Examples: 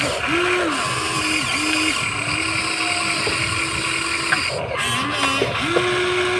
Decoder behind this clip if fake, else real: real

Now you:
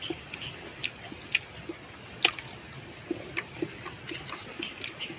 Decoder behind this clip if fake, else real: real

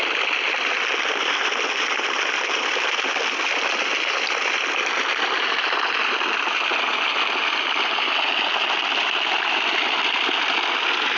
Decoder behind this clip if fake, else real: real